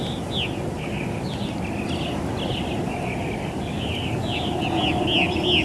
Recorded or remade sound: recorded